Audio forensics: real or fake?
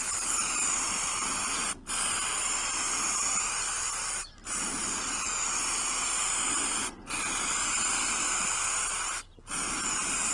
real